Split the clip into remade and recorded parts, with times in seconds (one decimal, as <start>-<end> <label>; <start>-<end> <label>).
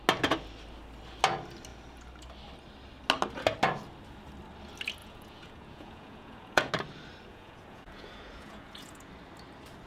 0.0-5.0 recorded; 5.0-6.7 remade; 6.7-7.3 recorded; 7.3-9.1 remade; 9.1-9.9 recorded